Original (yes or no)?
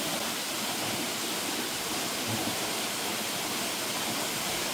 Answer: yes